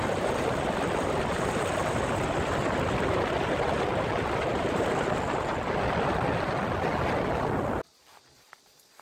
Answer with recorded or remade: recorded